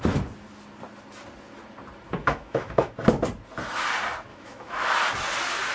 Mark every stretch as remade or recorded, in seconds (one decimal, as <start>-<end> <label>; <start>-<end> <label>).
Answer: 0.0-2.2 recorded; 2.2-3.0 remade; 3.0-4.3 recorded; 4.3-4.9 remade; 4.9-5.7 recorded